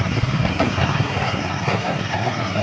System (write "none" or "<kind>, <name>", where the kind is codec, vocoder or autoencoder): codec, SNAC